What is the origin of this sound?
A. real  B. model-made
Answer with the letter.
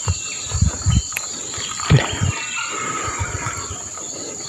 A